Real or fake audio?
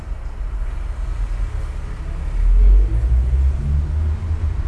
real